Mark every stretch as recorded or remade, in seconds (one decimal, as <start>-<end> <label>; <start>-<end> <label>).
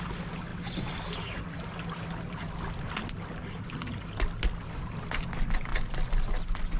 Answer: 0.0-6.8 recorded